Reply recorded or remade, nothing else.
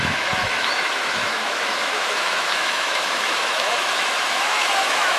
remade